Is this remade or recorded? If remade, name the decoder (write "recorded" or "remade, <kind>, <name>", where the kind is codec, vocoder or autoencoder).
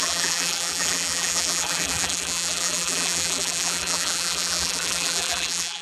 remade, vocoder, BigVGAN v2